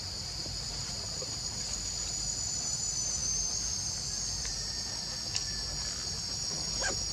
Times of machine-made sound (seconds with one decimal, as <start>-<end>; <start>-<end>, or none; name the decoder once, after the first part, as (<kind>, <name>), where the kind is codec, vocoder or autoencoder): none